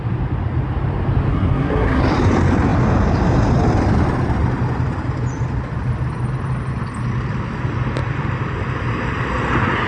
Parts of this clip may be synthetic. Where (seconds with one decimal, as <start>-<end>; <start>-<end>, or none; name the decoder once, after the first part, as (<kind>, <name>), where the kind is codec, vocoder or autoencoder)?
1.3-2.0 (codec, SNAC)